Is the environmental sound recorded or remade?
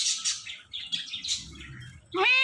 recorded